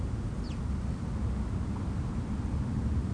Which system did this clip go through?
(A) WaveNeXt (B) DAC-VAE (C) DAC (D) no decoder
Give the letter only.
D